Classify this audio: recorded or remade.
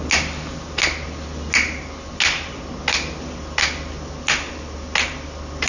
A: recorded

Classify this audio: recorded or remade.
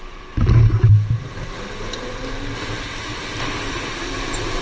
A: recorded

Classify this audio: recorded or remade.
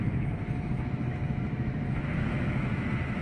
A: remade